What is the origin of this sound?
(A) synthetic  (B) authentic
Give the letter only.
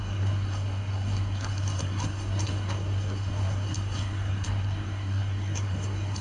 A